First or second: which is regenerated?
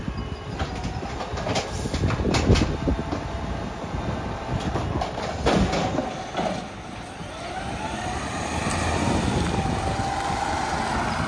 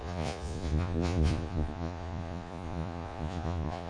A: second